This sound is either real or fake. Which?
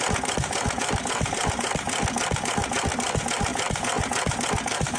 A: real